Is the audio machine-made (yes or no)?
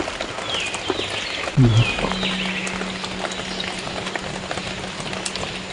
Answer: no